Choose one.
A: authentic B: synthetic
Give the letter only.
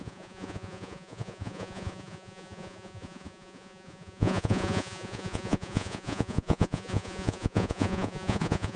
B